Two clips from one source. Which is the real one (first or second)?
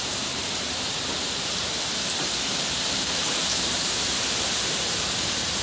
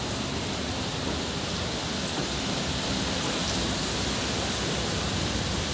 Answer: second